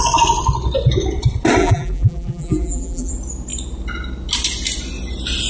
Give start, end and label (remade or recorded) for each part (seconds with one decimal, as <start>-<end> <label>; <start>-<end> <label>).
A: 0.0-1.6 recorded; 1.6-3.1 remade; 3.1-5.5 recorded